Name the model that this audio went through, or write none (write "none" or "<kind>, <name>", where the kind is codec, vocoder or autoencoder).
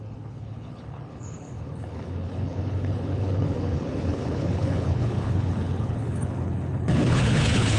codec, HILCodec